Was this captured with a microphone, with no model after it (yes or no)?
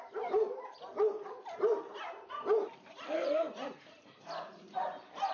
yes